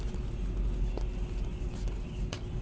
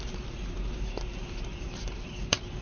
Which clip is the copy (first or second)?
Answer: second